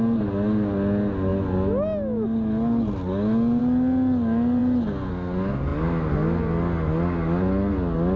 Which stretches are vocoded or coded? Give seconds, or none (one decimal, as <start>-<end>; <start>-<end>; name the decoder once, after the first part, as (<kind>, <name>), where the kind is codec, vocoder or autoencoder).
none